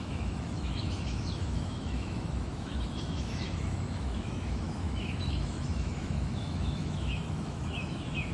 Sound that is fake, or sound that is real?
fake